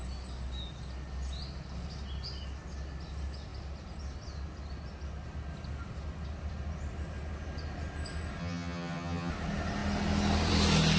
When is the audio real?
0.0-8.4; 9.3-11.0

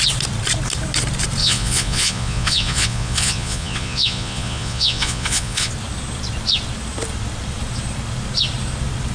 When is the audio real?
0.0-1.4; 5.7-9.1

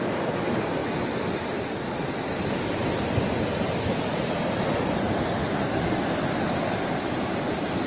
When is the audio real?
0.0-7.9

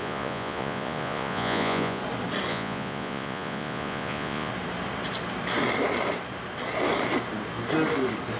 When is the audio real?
2.0-2.5; 4.5-8.4